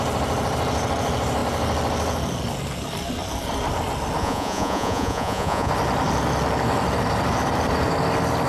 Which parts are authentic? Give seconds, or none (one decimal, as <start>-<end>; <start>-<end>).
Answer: 0.0-4.2; 5.7-8.5